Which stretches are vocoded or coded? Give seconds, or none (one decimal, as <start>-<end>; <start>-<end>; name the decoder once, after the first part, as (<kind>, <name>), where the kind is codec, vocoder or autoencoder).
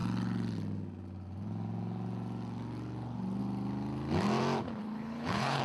4.8-5.6 (codec, HILCodec)